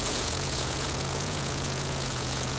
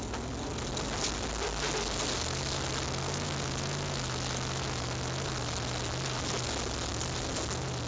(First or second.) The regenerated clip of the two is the first